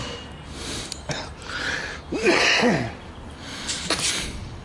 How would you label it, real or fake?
real